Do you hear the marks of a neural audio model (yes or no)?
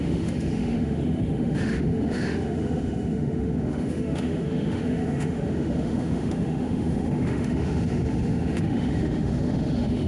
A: yes